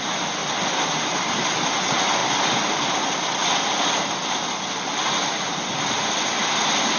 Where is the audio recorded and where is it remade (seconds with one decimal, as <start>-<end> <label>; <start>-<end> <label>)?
0.0-7.0 recorded

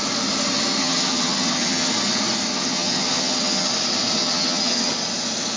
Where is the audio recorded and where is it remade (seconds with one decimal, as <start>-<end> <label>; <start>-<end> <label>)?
0.0-0.8 recorded; 0.8-1.9 remade; 1.9-2.5 recorded; 2.5-3.7 remade; 3.7-4.2 recorded; 4.2-4.9 remade; 4.9-5.6 recorded

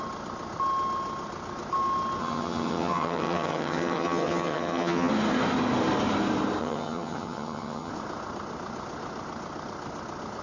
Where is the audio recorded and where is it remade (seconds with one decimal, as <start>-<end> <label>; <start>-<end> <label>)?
0.0-2.2 recorded; 2.2-5.1 remade; 5.1-6.6 recorded; 6.6-7.9 remade; 7.9-10.4 recorded

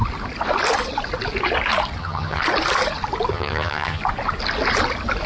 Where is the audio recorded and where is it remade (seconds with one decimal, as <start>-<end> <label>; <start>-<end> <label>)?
0.0-2.0 recorded; 2.0-2.4 remade; 2.4-3.3 recorded; 3.3-4.0 remade; 4.0-5.3 recorded

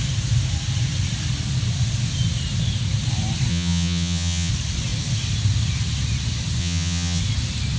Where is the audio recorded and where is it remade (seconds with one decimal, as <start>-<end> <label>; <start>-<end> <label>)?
0.0-3.5 recorded; 3.5-4.5 remade; 4.5-6.6 recorded; 6.6-7.2 remade; 7.2-7.8 recorded